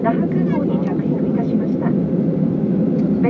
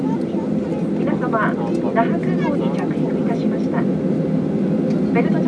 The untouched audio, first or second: second